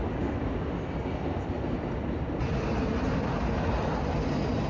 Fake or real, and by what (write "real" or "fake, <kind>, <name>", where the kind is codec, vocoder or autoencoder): real